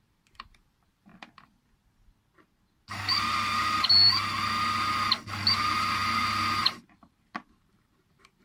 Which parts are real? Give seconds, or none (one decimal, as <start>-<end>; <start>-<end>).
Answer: 1.1-5.5